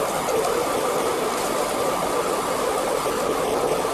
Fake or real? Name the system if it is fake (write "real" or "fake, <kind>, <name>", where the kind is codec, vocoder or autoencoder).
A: real